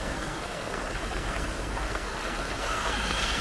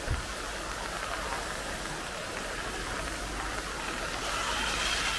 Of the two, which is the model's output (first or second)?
first